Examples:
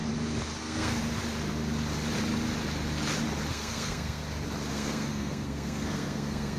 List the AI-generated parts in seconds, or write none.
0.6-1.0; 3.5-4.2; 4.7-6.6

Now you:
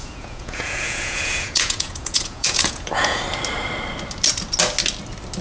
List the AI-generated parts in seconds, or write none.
0.0-3.2

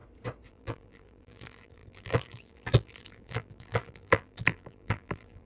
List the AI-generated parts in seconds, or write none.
0.5-5.5

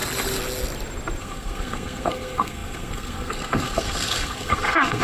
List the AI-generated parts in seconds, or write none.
1.2-5.0

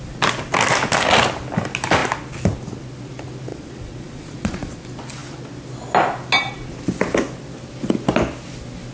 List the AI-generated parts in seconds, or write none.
3.5-4.8

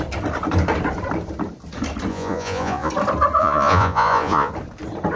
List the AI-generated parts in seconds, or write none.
2.1-2.9; 3.4-4.5

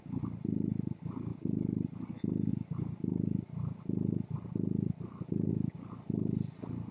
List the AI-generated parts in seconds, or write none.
2.5-5.5

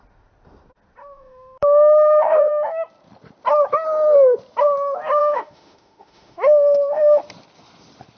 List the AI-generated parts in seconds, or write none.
1.0-2.5; 5.2-7.2